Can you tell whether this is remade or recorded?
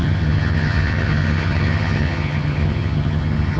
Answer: remade